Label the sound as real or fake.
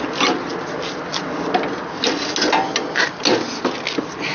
real